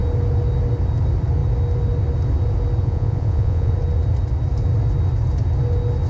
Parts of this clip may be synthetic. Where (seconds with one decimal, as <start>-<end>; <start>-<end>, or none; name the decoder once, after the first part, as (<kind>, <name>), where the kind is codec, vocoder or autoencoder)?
2.8-3.7 (vocoder, Vocos)

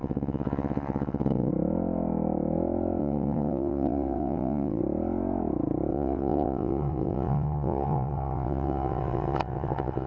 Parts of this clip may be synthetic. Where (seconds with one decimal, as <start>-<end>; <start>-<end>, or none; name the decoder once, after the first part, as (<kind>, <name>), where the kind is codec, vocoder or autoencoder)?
0.0-1.5 (vocoder, WaveNeXt); 3.0-4.8; 5.9-10.1

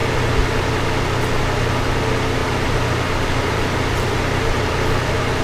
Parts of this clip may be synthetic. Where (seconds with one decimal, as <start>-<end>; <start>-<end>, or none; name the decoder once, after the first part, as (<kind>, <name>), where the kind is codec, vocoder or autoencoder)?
0.0-0.7 (vocoder, BigVGAN v2); 2.4-5.4

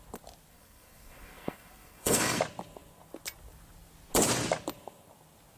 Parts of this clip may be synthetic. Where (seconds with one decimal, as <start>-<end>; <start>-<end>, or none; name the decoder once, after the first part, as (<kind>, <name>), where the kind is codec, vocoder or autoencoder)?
0.5-2.4 (codec, SNAC)

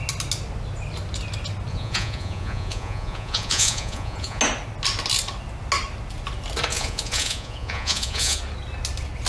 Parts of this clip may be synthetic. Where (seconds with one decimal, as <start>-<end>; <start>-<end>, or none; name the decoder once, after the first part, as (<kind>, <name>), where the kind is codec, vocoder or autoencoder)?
1.7-4.4 (vocoder, Vocos); 6.7-8.4

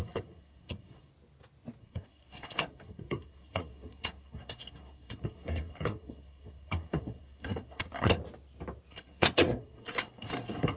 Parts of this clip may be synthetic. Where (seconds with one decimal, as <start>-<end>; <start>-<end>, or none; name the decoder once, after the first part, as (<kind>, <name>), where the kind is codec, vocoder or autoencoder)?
0.0-1.1 (codec, SNAC); 1.8-8.2; 8.9-10.8

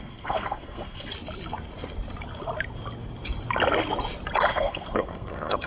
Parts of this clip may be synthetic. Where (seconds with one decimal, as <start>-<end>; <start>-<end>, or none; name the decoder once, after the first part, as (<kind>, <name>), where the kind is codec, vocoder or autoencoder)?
0.0-1.1 (codec, SNAC); 4.5-5.7

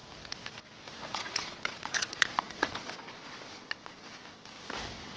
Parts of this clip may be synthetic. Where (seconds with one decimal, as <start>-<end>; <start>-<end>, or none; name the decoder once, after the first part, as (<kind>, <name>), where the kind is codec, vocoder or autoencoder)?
1.1-4.2 (vocoder, Vocos)